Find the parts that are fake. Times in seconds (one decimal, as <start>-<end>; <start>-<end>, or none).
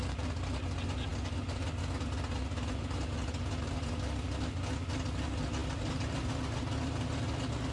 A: none